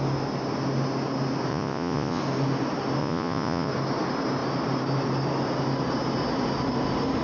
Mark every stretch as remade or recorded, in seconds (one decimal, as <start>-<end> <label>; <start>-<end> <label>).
0.0-1.5 recorded; 1.5-2.2 remade; 2.2-3.0 recorded; 3.0-3.7 remade; 3.7-7.2 recorded